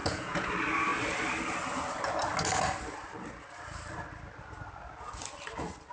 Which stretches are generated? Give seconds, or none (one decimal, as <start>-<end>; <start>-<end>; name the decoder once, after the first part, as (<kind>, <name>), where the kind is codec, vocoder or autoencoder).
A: 0.0-0.5 (vocoder, Vocos)